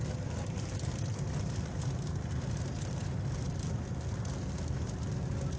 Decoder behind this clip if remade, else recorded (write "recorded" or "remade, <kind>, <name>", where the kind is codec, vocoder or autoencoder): recorded